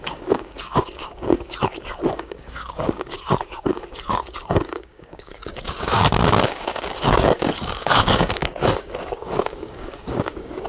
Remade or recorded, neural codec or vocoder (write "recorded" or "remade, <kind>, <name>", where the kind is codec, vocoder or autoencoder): remade, codec, DAC